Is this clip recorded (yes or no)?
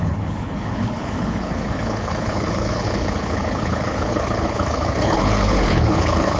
no